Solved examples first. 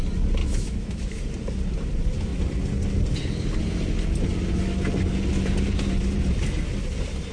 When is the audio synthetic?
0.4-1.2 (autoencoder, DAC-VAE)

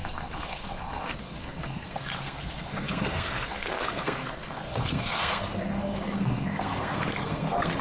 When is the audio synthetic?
0.0-7.8 (codec, SNAC)